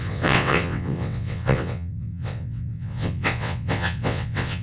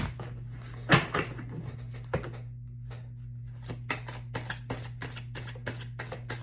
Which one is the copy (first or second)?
first